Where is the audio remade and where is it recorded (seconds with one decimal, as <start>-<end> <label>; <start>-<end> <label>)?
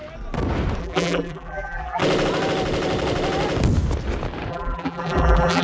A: 0.0-0.8 recorded; 0.8-2.0 remade; 2.0-4.5 recorded; 4.5-5.6 remade